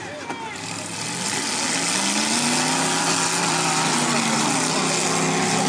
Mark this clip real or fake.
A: real